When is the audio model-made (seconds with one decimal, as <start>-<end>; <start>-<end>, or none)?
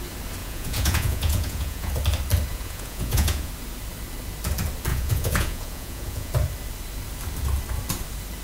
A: 0.4-1.9; 2.5-3.5; 4.9-6.3